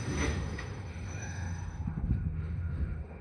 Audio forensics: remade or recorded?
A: remade